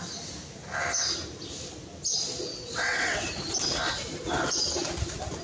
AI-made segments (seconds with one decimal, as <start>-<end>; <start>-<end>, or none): 2.5-3.3